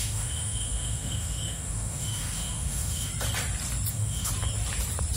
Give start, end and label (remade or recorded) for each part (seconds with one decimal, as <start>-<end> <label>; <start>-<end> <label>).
0.0-3.1 remade; 3.1-3.9 recorded; 3.9-4.3 remade; 4.3-5.2 recorded